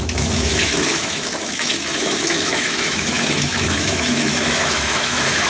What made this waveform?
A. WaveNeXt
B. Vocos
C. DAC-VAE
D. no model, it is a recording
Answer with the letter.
C